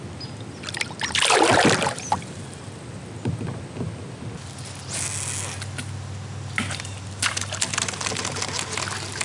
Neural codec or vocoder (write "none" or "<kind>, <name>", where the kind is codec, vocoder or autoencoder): none